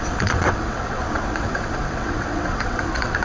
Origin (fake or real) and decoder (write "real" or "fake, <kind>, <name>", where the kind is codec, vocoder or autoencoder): fake, vocoder, WaveNeXt